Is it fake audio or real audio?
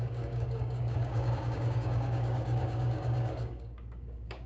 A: fake